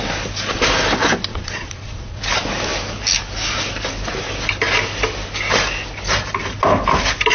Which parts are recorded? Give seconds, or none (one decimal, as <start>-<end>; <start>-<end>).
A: 0.0-1.3; 2.2-7.3

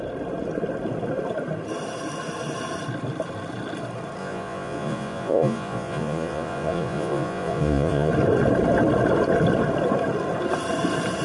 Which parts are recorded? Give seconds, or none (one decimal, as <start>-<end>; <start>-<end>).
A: 0.0-4.2; 8.1-11.2

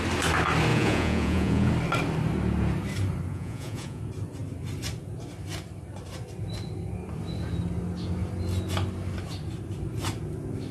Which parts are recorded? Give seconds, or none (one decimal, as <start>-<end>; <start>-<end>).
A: 0.0-0.7; 1.7-3.3; 4.0-10.7

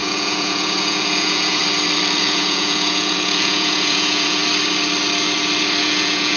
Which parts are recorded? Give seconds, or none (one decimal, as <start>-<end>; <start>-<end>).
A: 1.6-2.2; 4.4-5.8

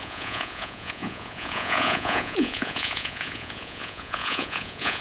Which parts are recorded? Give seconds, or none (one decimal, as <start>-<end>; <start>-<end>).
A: none

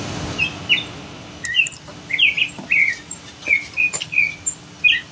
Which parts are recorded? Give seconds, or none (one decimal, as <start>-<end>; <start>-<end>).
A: 0.0-5.1